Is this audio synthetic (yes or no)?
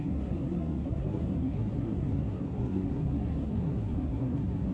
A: yes